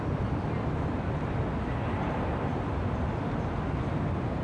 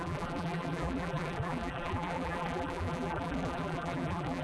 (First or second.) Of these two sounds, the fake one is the second